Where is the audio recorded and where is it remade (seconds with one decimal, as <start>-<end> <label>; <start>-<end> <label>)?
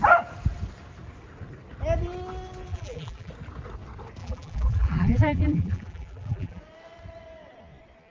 0.0-2.7 recorded; 2.7-3.3 remade; 3.3-4.2 recorded; 4.2-6.6 remade; 6.6-8.1 recorded